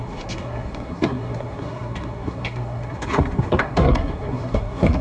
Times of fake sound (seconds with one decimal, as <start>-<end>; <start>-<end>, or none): 0.0-5.0